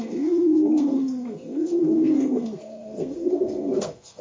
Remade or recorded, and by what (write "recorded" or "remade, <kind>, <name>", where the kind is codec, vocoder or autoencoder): remade, codec, SNAC